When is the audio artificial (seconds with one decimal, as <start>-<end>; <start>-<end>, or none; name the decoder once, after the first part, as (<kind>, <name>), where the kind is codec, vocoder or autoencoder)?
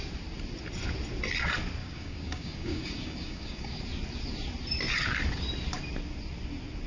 1.8-3.8 (codec, DAC)